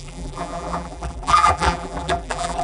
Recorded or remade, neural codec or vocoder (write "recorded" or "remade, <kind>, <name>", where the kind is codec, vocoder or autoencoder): remade, vocoder, BigVGAN v2